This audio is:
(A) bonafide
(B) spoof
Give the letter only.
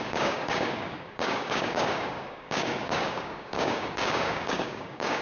B